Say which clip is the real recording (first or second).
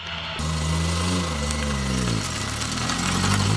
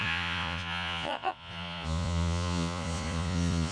first